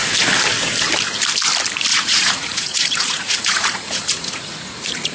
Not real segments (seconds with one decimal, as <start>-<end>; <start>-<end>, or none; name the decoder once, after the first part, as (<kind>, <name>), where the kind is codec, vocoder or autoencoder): 1.9-5.1 (vocoder, Vocos)